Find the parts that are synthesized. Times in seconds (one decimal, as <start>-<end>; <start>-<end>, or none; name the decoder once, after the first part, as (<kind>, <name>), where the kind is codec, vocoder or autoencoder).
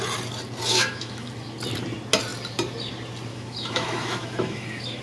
0.7-1.3 (autoencoder, DAC-VAE); 3.3-5.0